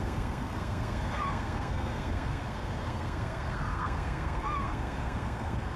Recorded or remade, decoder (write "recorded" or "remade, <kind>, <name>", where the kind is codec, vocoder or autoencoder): remade, codec, SNAC